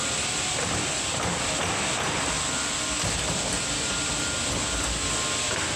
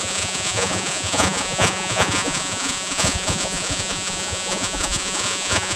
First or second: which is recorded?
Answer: first